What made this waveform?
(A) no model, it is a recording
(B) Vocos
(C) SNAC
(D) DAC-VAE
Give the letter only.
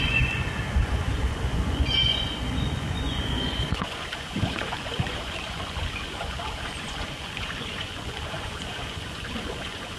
B